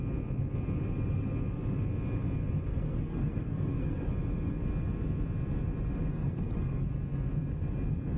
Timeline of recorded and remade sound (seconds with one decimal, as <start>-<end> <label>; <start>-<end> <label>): 0.0-2.7 recorded; 2.7-4.1 remade; 4.1-6.1 recorded; 6.1-6.9 remade; 6.9-8.2 recorded